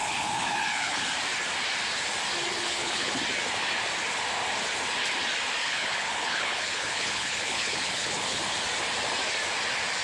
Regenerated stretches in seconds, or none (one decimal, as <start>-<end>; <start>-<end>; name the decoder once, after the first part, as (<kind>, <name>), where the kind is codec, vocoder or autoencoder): 0.0-1.0 (codec, HILCodec); 2.5-3.2; 5.6-8.4